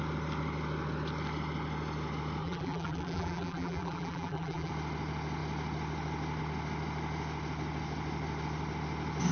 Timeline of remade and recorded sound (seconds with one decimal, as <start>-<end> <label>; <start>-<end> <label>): 0.0-2.4 recorded; 2.4-4.7 remade; 4.7-9.3 recorded